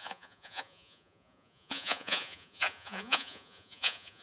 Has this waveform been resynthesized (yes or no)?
yes